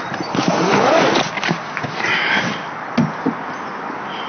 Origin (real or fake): real